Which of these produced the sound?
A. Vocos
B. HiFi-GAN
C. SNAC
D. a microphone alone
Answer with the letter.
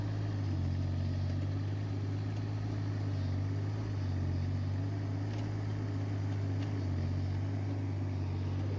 D